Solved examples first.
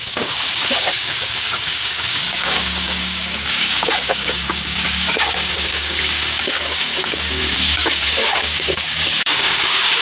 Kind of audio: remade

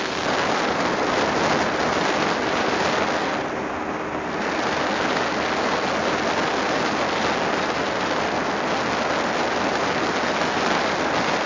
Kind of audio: recorded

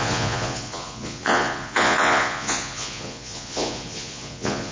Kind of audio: remade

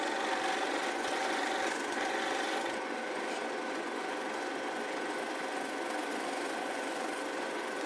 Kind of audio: remade